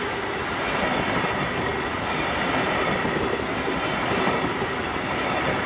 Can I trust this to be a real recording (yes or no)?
yes